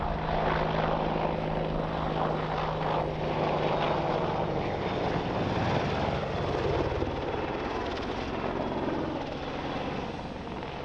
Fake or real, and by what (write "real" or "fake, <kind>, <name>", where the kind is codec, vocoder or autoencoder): real